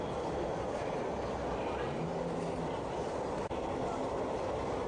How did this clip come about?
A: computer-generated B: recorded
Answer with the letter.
B